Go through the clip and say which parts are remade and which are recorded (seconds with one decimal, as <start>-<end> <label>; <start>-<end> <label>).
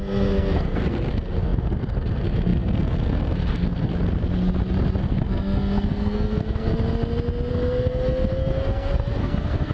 0.0-3.9 remade; 3.9-5.0 recorded; 5.0-6.7 remade; 6.7-7.5 recorded; 7.5-9.7 remade